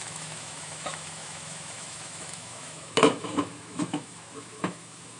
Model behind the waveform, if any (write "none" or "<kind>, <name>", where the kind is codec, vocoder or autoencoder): autoencoder, DAC-VAE